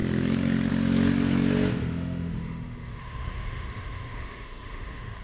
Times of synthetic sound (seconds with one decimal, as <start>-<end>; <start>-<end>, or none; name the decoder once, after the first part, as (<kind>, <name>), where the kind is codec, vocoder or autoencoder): 1.8-5.2 (autoencoder, DAC-VAE)